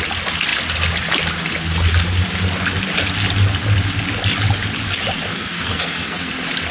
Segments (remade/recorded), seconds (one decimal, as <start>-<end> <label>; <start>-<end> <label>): 0.0-5.3 recorded; 5.3-6.3 remade; 6.3-6.7 recorded